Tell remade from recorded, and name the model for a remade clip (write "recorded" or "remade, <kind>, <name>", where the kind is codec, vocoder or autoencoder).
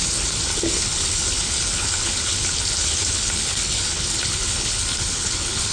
remade, codec, HILCodec